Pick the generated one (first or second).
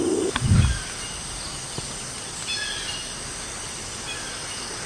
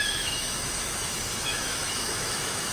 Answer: second